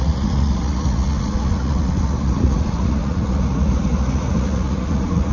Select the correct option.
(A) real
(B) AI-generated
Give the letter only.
B